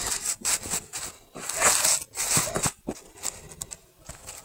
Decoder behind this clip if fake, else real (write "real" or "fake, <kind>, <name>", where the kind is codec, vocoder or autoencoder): real